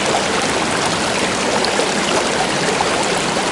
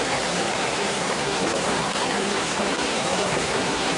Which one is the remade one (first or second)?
second